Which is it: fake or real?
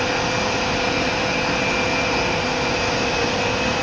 real